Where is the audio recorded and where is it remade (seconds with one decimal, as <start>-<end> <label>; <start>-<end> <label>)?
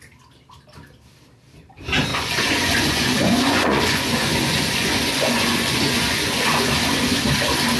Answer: 0.0-2.1 recorded; 2.1-6.7 remade; 6.7-7.8 recorded